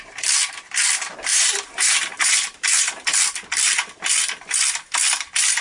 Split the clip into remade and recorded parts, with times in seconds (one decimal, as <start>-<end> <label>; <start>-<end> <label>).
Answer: 0.0-1.3 recorded; 1.3-2.1 remade; 2.1-5.6 recorded